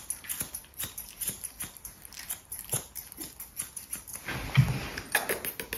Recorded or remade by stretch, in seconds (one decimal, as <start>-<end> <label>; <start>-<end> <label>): 0.0-5.8 recorded